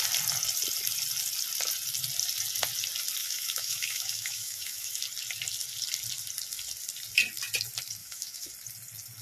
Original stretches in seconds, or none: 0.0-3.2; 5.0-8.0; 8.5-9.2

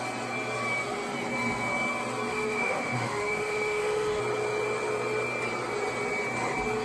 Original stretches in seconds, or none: 0.0-2.3; 4.2-6.8

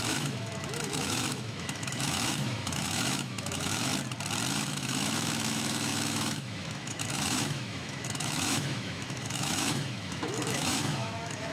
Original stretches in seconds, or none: 3.9-4.5

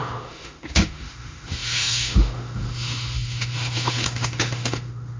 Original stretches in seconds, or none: none

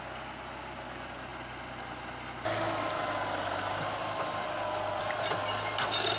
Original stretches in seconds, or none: 0.0-6.2